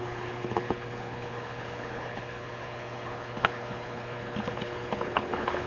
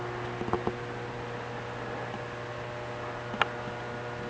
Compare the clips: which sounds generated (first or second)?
first